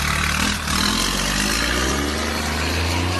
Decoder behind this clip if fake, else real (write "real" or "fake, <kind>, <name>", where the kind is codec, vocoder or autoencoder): real